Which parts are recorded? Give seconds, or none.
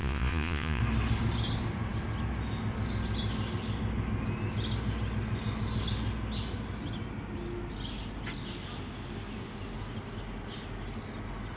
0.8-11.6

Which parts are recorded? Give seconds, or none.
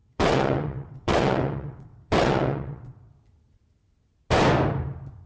3.1-5.3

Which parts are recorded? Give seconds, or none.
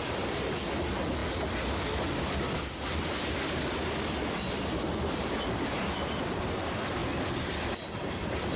0.0-8.6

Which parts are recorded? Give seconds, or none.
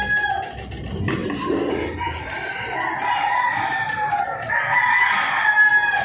0.0-1.2; 4.5-6.0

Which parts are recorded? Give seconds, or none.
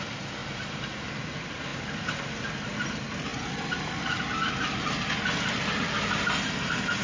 0.0-0.4; 1.2-1.7; 2.3-7.0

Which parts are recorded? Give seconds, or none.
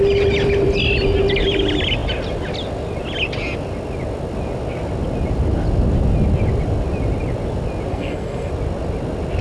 0.0-7.9; 8.5-9.4